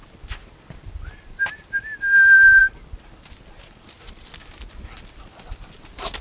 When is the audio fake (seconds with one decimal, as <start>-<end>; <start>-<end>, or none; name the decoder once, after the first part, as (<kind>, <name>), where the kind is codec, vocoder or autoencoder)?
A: none